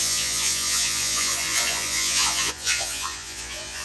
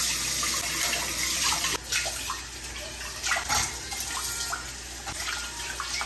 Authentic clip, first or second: second